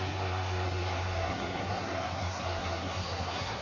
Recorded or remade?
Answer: remade